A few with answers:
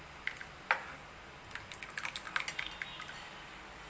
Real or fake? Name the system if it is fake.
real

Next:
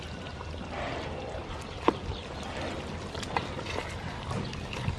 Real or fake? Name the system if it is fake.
real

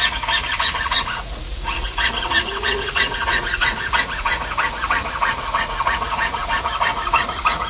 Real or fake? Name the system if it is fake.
fake, vocoder, Vocos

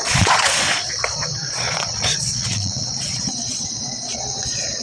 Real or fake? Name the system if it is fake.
fake, vocoder, Vocos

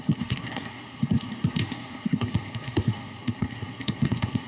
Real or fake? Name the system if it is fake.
fake, codec, SNAC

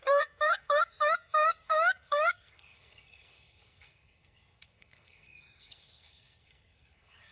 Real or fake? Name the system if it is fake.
fake, codec, SNAC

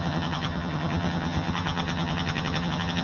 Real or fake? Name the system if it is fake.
fake, vocoder, HiFi-GAN